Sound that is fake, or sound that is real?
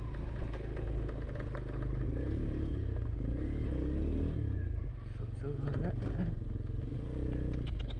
real